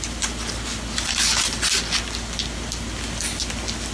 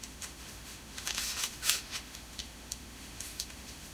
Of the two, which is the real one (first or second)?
first